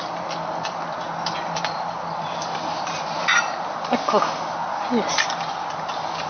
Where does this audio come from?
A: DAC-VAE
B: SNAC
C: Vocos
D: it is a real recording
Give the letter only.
D